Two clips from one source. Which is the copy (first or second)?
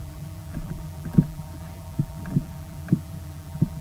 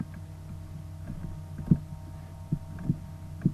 first